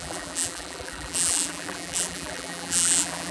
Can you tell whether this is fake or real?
fake